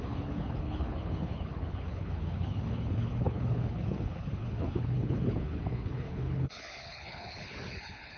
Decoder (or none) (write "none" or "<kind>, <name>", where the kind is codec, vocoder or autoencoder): codec, HILCodec